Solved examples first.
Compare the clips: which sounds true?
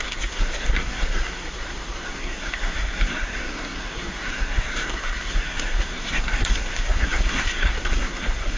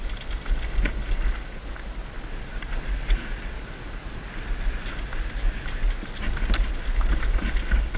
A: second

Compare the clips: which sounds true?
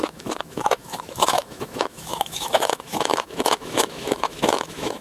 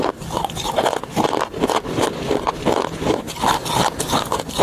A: second